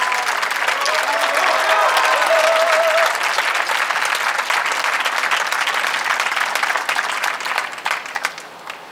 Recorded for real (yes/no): yes